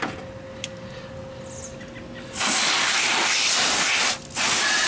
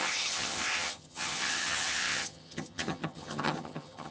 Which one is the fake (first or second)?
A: second